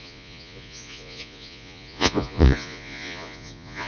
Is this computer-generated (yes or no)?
yes